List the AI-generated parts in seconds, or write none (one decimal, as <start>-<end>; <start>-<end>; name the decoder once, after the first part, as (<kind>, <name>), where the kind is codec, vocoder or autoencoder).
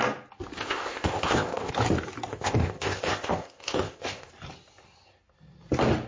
0.6-1.7 (codec, ZipCodec); 2.3-4.3